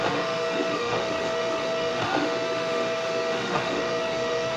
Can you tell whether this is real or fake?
fake